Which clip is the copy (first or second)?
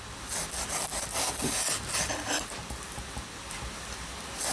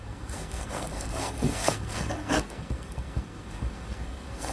second